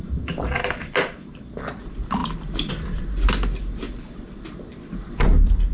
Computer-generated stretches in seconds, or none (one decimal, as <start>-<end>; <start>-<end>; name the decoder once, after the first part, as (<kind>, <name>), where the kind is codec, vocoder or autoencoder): none